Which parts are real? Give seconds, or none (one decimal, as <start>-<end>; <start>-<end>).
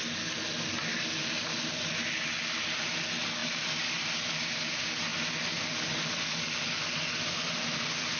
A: 0.0-8.2